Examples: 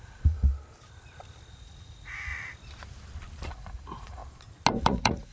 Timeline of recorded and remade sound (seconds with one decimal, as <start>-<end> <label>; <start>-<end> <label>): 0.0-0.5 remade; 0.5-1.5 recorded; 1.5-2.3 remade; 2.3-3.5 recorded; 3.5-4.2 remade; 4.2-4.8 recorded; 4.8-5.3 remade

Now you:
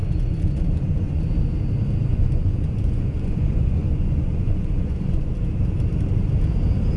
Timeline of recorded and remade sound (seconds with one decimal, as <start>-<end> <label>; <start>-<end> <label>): 0.0-1.2 remade; 1.2-2.1 recorded; 2.1-5.3 remade; 5.3-7.0 recorded

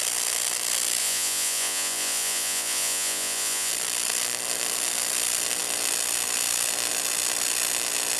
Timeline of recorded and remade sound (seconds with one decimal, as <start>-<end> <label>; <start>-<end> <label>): 0.0-1.0 recorded; 1.0-3.7 remade; 3.7-8.2 recorded

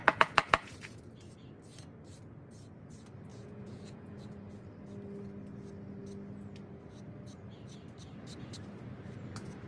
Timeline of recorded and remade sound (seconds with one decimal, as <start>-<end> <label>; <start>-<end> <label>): 0.0-1.0 remade; 1.0-3.3 recorded; 3.3-4.3 remade; 4.3-9.7 recorded

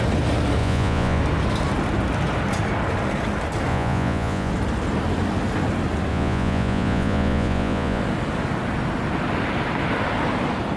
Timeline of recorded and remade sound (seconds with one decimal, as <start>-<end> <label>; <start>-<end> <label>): 0.0-0.6 recorded; 0.6-1.2 remade; 1.2-3.7 recorded; 3.7-4.5 remade; 4.5-6.1 recorded; 6.1-8.0 remade; 8.0-10.8 recorded